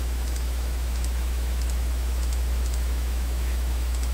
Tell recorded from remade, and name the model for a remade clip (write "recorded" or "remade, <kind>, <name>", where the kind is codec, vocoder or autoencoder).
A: remade, autoencoder, DAC-VAE